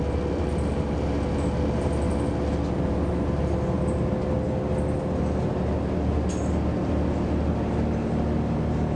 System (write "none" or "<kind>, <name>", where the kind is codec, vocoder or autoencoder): none